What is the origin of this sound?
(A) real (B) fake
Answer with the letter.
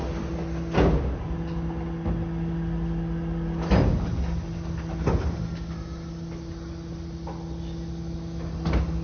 A